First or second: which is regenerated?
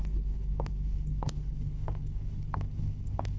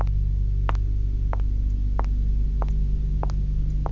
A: first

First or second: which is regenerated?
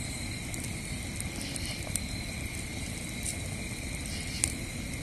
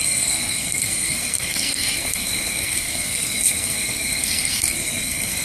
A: second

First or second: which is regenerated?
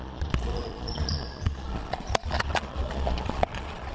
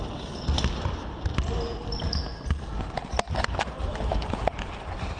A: first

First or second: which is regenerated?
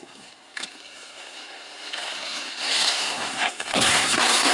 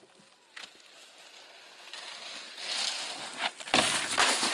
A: first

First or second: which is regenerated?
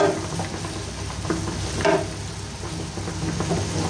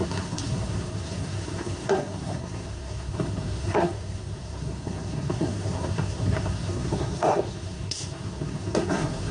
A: second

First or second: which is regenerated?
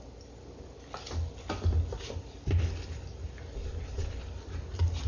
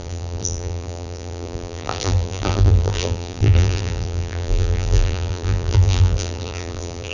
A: second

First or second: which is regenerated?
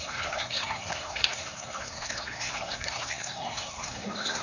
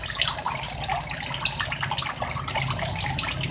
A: first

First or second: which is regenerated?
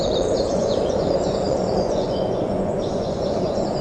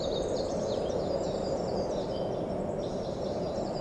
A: first